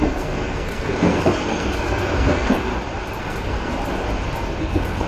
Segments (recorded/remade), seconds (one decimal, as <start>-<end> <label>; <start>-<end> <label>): 0.0-2.7 remade; 2.7-3.2 recorded; 3.2-3.7 remade; 3.7-4.6 recorded; 4.6-5.1 remade